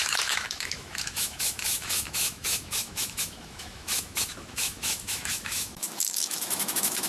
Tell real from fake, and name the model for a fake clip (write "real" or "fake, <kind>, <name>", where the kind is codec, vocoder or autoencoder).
fake, autoencoder, DAC-VAE